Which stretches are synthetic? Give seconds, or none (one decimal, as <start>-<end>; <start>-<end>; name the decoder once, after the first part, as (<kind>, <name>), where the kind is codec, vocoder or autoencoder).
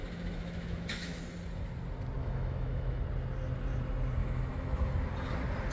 0.0-1.2 (autoencoder, DAC-VAE); 2.2-3.0; 4.2-4.8